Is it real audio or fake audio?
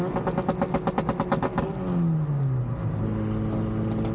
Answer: real